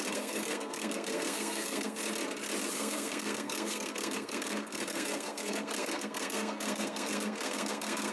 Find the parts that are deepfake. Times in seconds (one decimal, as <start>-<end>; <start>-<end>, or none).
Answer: 0.0-2.0; 2.7-8.1